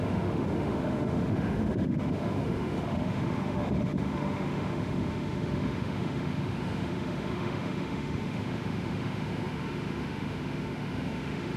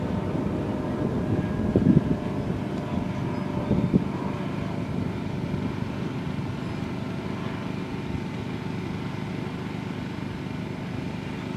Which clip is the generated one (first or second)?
first